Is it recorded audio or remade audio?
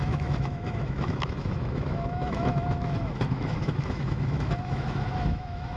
remade